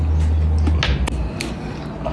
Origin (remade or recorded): recorded